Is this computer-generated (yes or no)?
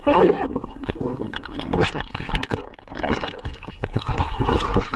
yes